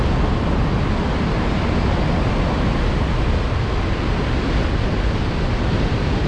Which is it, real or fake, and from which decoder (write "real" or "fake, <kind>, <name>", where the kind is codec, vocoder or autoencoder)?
real